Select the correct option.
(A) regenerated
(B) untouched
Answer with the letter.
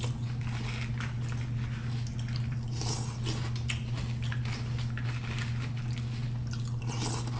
B